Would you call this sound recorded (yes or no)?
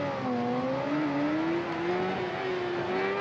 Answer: yes